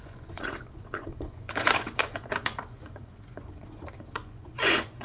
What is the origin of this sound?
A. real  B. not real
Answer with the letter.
B